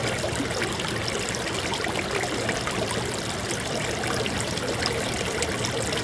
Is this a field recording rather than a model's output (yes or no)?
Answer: yes